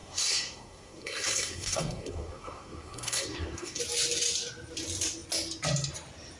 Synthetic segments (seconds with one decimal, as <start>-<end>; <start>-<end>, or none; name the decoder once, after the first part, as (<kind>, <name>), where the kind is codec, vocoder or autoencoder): 0.0-3.8 (codec, SNAC)